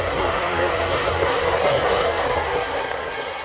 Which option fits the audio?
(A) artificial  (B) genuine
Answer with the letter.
A